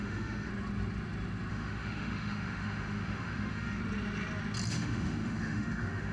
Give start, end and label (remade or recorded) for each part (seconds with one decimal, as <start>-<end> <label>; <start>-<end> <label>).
0.0-0.5 remade; 0.5-1.5 recorded; 1.5-3.8 remade; 3.8-4.7 recorded; 4.7-6.1 remade